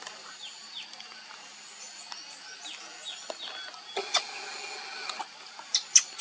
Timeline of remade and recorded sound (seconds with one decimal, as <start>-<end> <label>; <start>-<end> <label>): 0.0-6.2 recorded